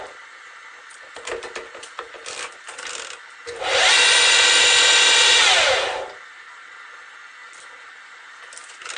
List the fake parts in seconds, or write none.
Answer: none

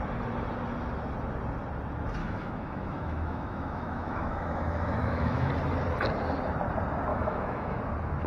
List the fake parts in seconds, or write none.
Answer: 2.2-5.5 (autoencoder, DAC-VAE); 7.1-7.8

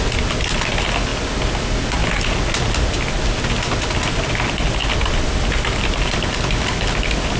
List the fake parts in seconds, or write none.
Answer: none

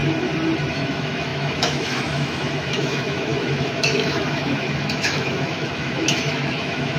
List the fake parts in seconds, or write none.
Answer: 0.7-7.0 (autoencoder, DAC-VAE)

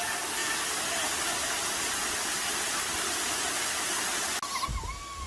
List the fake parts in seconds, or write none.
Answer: none